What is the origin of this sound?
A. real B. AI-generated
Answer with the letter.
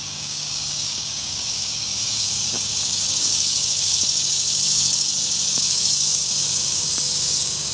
B